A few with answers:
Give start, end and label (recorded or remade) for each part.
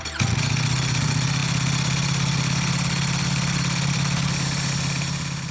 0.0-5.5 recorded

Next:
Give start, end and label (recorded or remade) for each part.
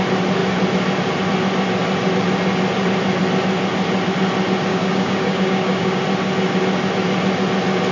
0.0-4.7 recorded; 4.7-6.0 remade; 6.0-7.9 recorded